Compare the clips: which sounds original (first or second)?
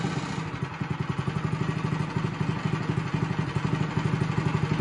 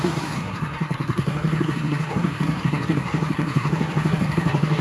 first